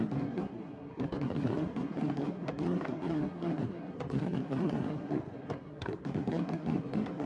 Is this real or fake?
fake